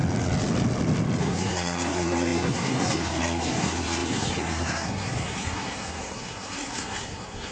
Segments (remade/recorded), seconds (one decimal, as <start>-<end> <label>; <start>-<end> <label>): 0.0-1.2 recorded; 1.2-7.5 remade